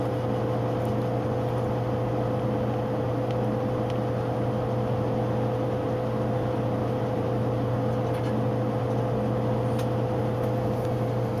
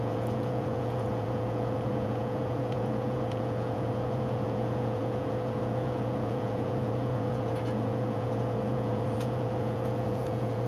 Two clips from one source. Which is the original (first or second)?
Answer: first